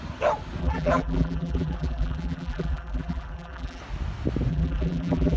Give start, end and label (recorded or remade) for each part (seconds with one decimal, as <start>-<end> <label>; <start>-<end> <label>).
0.0-0.6 recorded; 0.6-3.8 remade; 3.8-4.5 recorded; 4.5-5.4 remade